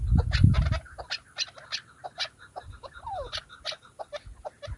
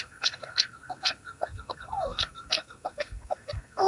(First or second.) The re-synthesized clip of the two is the second